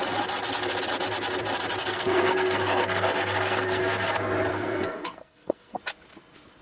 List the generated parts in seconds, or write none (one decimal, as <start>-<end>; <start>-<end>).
1.8-3.8; 4.5-5.8